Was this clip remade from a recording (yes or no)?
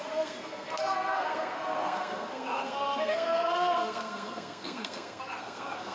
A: yes